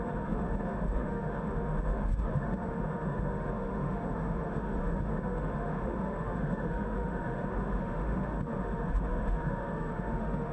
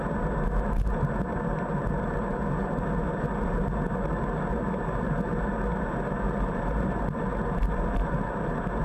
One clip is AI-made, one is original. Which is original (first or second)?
second